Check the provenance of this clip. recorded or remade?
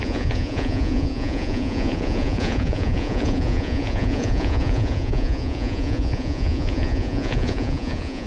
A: remade